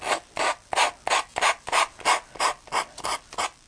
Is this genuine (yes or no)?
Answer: yes